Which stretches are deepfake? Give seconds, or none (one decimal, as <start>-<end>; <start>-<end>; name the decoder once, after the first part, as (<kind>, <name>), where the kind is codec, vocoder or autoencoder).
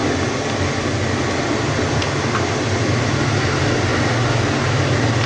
none